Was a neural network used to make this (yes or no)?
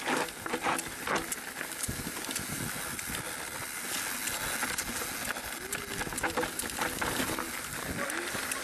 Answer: no